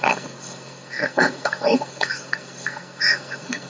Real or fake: fake